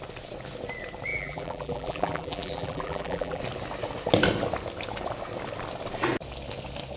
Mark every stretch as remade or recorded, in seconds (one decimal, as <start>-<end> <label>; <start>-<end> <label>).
0.0-1.1 recorded; 1.1-3.4 remade; 3.4-7.0 recorded